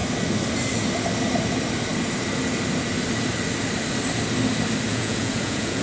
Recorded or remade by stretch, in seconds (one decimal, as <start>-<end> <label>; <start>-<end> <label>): 0.0-4.9 recorded; 4.9-5.8 remade

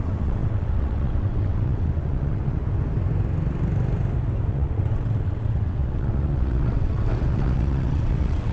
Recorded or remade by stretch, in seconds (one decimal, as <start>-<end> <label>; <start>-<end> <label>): 0.0-2.6 remade; 2.6-4.5 recorded; 4.5-8.5 remade

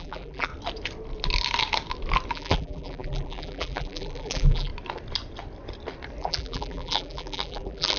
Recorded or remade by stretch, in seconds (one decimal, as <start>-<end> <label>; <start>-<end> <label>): 0.0-0.5 remade; 0.5-2.3 recorded; 2.3-4.7 remade; 4.7-6.2 recorded; 6.2-8.0 remade

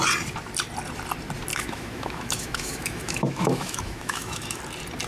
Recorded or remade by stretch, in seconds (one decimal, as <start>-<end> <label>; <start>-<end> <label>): 0.0-1.5 recorded; 1.5-4.6 remade; 4.6-5.1 recorded

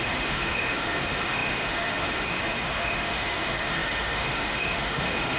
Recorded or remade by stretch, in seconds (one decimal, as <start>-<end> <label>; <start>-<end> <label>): 0.0-5.4 remade